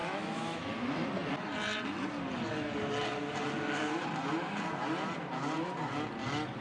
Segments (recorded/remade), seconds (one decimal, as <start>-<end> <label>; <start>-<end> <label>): 0.0-0.7 remade; 0.7-6.6 recorded